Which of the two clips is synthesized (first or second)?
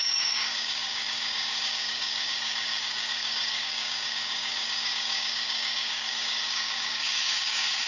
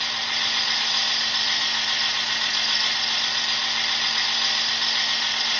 first